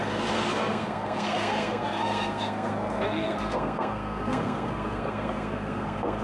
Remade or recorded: remade